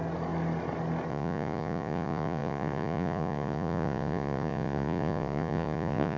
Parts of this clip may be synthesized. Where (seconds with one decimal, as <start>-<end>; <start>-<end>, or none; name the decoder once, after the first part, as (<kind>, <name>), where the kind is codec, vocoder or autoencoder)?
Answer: 1.1-6.2 (vocoder, Vocos)